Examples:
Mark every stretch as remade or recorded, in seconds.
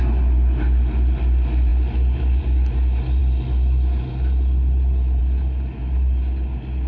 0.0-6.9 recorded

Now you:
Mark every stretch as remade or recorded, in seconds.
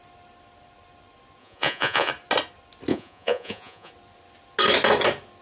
0.0-1.4 recorded; 1.4-2.1 remade; 2.1-2.9 recorded; 2.9-3.9 remade; 3.9-5.4 recorded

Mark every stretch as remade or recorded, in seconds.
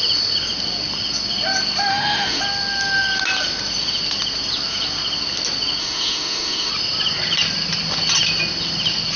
0.0-1.9 recorded; 1.9-2.4 remade; 2.4-5.8 recorded; 5.8-6.7 remade; 6.7-9.2 recorded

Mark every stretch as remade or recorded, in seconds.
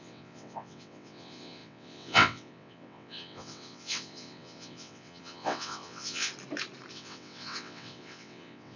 0.0-6.3 remade; 6.3-6.9 recorded; 6.9-8.8 remade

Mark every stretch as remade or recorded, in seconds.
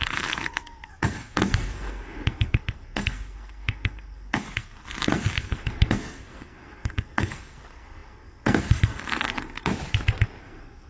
0.0-9.7 remade; 9.7-10.4 recorded; 10.4-10.9 remade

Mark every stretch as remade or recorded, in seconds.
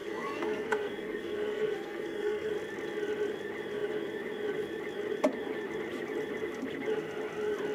0.0-2.5 remade; 2.5-7.7 recorded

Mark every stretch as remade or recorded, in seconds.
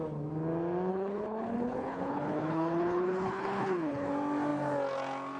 0.0-0.9 recorded; 0.9-4.1 remade; 4.1-5.4 recorded